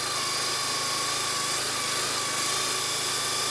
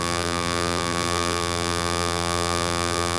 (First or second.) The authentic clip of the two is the first